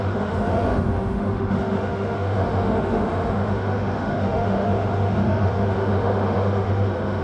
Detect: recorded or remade remade